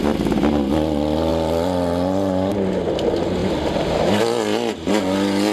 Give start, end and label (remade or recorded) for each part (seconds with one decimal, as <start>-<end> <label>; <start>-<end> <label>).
0.0-3.4 recorded; 3.4-4.2 remade; 4.2-5.5 recorded